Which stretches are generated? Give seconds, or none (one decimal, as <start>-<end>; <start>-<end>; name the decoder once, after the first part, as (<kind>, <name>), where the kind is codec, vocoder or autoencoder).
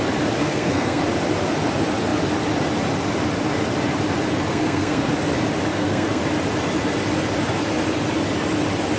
0.4-1.0 (codec, SNAC); 4.5-5.1; 5.7-6.2